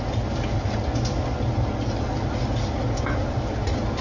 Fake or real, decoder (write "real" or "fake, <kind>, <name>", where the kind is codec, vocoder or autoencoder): real